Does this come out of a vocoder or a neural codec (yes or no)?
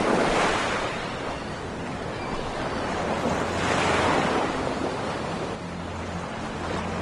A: no